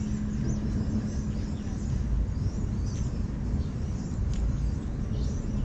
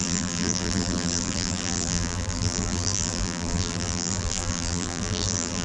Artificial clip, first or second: second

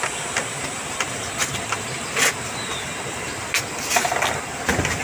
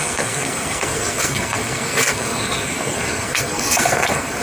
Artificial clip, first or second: second